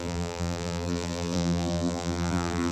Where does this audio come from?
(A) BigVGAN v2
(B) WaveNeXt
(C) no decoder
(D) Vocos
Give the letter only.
A